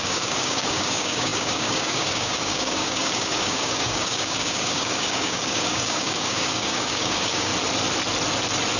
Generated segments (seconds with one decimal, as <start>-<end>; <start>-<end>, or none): 0.0-7.5